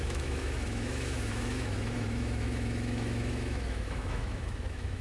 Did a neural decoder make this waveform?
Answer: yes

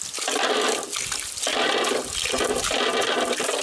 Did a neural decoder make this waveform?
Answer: no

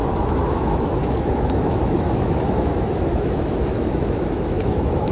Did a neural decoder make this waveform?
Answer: yes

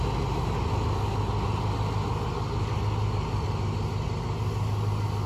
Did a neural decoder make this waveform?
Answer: no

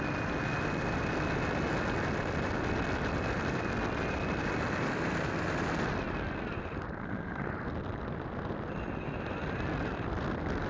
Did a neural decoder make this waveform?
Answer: no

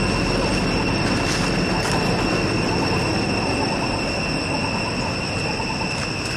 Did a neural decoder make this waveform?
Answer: no